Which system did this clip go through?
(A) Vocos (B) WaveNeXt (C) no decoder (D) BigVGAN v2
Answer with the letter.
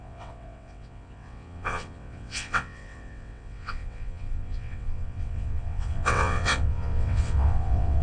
B